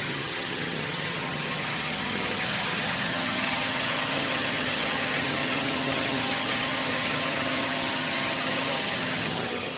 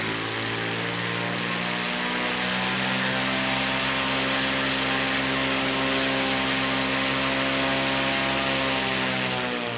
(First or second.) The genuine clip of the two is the second